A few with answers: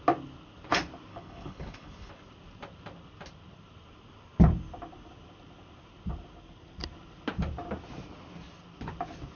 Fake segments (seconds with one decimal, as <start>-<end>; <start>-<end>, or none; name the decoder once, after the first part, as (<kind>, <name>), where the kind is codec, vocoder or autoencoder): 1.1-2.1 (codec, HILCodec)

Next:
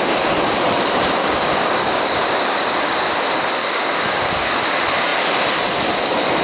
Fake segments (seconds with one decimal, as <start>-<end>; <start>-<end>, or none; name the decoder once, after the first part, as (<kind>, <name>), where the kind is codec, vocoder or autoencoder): 1.2-3.1 (codec, DAC); 3.6-4.6

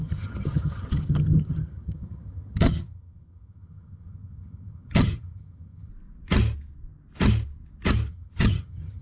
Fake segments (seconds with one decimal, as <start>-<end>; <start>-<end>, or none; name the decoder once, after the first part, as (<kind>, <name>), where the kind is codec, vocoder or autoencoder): 0.0-5.9 (vocoder, HiFi-GAN); 8.1-9.0

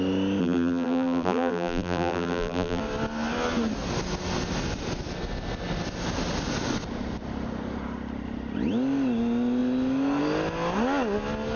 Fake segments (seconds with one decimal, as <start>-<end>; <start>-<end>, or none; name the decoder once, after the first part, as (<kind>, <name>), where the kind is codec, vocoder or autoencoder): 0.4-2.8 (vocoder, BigVGAN v2)

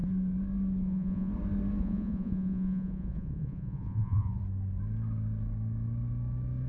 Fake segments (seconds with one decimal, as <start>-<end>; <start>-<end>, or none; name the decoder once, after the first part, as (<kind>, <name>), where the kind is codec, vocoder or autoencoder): 0.8-1.3 (vocoder, Vocos); 1.8-4.4